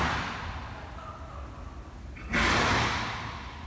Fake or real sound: real